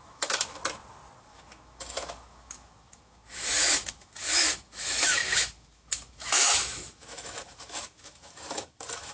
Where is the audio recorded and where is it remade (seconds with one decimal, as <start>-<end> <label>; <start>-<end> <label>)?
0.0-0.6 remade; 0.6-1.2 recorded; 1.2-9.1 remade